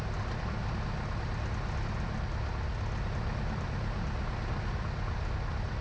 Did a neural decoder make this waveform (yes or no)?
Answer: no